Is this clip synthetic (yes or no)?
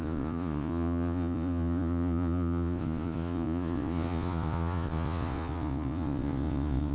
yes